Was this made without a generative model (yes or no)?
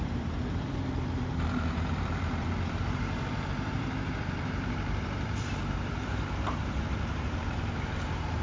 no